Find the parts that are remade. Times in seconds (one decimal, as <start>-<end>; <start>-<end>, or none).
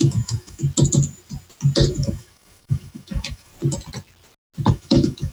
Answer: 0.0-0.6; 1.9-3.5; 4.7-5.3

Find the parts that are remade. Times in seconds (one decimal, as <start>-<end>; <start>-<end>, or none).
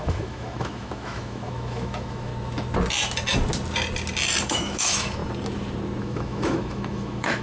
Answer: 0.0-2.3; 4.5-5.2; 6.0-7.4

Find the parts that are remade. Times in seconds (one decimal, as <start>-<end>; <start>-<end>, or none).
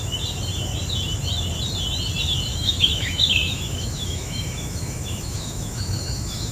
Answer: 2.5-6.5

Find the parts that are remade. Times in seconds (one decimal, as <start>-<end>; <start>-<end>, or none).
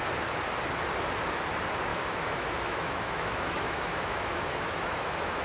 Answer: 1.9-5.4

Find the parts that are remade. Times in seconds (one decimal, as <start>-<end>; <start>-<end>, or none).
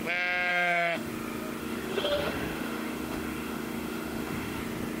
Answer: 0.5-1.1; 1.6-4.6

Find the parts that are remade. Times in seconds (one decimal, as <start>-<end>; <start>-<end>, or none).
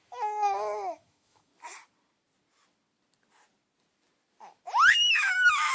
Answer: 0.0-1.5; 4.9-5.7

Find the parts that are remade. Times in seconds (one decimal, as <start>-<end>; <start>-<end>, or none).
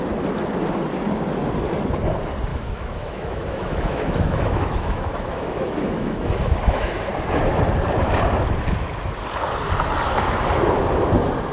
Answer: 2.5-7.1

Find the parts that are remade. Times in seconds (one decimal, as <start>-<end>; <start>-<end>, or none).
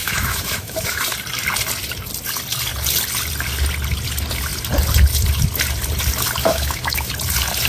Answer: 0.0-1.0; 6.4-7.1